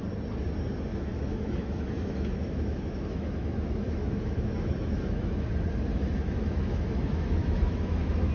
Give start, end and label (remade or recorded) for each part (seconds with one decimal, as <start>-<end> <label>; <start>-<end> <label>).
0.0-0.9 recorded; 0.9-5.5 remade; 5.5-5.9 recorded; 5.9-8.3 remade